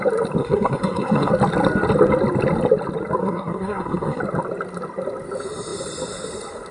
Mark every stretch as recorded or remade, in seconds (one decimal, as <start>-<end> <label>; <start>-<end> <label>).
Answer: 0.0-0.4 recorded; 0.4-1.3 remade; 1.3-3.2 recorded; 3.2-4.2 remade; 4.2-6.7 recorded